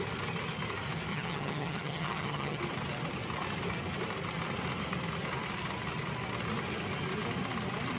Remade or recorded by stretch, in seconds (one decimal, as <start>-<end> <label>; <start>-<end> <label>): 0.0-1.1 recorded; 1.1-2.6 remade; 2.6-8.0 recorded

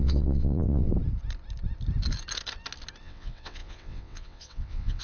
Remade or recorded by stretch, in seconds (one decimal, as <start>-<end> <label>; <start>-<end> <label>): 0.0-0.9 remade; 0.9-3.0 recorded; 3.0-5.0 remade

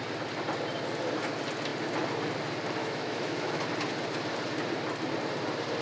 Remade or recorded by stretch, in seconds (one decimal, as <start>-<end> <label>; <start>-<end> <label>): 0.0-2.8 recorded; 2.8-3.6 remade; 3.6-5.8 recorded

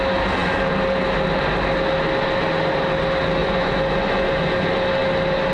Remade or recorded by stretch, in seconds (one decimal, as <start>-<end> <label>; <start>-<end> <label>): 0.0-3.4 recorded; 3.4-4.5 remade; 4.5-5.5 recorded

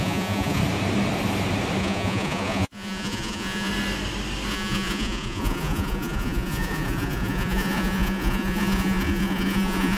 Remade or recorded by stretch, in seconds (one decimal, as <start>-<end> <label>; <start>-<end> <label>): 0.0-0.6 remade; 0.6-1.8 recorded; 1.8-3.7 remade; 3.7-4.5 recorded; 4.5-10.0 remade